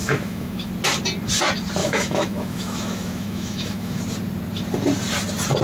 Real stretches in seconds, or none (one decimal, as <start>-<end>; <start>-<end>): 0.7-1.8; 4.0-5.6